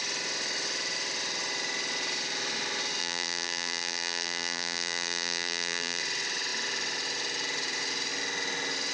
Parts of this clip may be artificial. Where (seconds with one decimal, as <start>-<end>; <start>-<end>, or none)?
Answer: 3.0-6.0